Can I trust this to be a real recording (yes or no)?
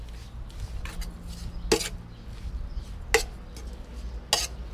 yes